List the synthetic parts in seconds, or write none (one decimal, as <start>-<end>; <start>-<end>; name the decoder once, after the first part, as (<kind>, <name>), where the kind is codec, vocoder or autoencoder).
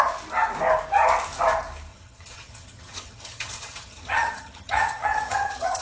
1.9-5.8 (vocoder, HiFi-GAN)